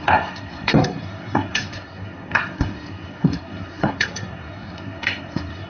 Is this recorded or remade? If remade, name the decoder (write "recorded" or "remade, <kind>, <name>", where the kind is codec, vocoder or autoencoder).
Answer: remade, codec, SNAC